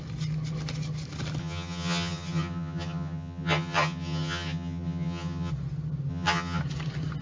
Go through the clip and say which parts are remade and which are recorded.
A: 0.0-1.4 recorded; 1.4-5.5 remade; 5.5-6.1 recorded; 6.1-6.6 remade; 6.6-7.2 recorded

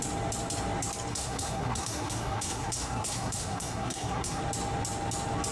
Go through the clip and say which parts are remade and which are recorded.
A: 0.0-1.1 recorded; 1.1-4.4 remade; 4.4-5.5 recorded

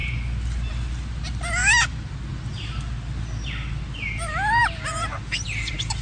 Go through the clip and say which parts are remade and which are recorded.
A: 0.0-6.0 recorded

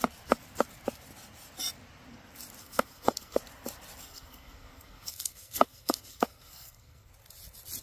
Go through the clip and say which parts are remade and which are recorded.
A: 0.0-2.6 recorded; 2.6-3.4 remade; 3.4-4.0 recorded; 4.0-7.1 remade; 7.1-7.8 recorded

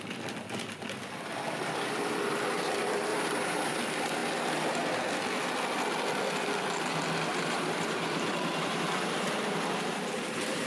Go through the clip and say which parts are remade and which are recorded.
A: 0.0-3.1 recorded; 3.1-3.7 remade; 3.7-7.3 recorded; 7.3-10.7 remade